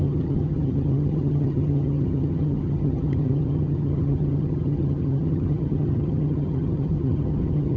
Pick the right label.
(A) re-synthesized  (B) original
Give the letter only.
A